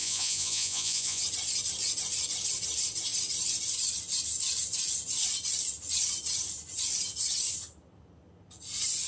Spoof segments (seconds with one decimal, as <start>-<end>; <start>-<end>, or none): 0.0-1.2